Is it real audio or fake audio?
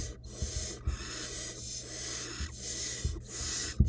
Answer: real